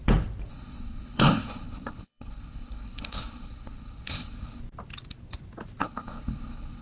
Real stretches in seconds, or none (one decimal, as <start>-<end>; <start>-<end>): 0.0-0.5; 4.6-5.8